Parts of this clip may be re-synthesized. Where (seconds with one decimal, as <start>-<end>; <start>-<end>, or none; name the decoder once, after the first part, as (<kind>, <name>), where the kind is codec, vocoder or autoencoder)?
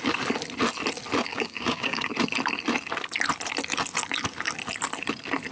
1.3-2.1 (codec, DAC)